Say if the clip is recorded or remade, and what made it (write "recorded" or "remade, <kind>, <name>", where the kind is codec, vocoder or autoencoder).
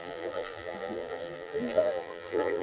remade, vocoder, BigVGAN v2